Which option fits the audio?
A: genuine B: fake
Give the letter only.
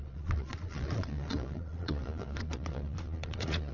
B